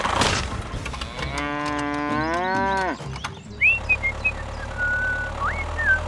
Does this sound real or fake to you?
real